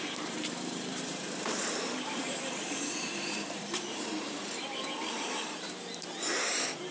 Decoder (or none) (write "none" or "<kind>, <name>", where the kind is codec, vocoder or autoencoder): vocoder, BigVGAN v2